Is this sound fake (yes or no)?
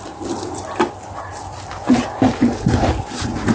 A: no